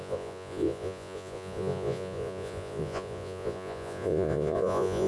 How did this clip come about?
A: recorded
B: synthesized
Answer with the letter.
B